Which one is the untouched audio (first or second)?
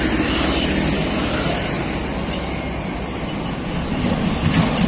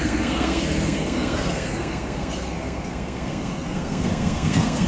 first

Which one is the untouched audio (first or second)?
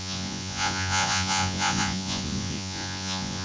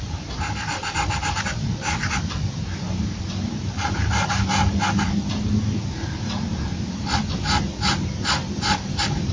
second